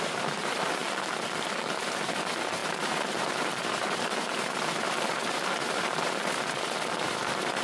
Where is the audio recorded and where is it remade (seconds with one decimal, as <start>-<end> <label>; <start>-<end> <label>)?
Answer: 0.0-0.8 remade; 0.8-1.7 recorded; 1.7-7.6 remade